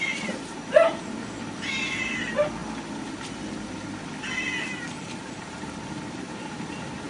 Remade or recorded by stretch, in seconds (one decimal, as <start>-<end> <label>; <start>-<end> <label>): 0.0-7.1 recorded